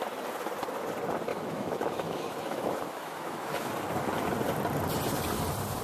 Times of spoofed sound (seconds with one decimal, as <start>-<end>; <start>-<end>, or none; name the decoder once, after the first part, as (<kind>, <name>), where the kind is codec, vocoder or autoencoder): 1.3-3.7 (autoencoder, DAC-VAE)